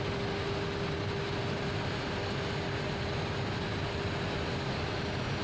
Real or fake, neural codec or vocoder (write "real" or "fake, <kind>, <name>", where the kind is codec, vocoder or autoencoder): real